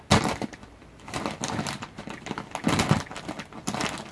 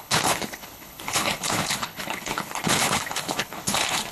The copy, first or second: second